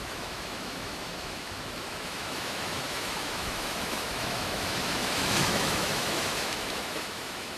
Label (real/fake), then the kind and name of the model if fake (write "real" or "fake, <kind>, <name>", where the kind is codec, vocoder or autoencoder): fake, autoencoder, DAC-VAE